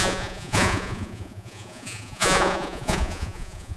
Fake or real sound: fake